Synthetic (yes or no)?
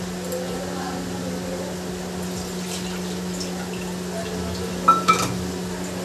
no